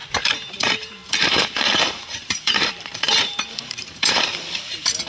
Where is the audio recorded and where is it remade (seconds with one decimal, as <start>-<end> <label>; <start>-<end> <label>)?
0.0-0.5 recorded; 0.5-5.1 remade